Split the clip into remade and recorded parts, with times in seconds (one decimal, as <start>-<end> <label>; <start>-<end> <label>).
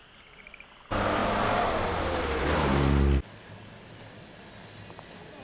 0.0-5.4 recorded